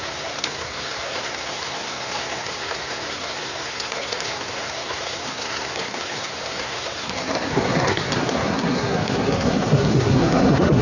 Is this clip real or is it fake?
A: fake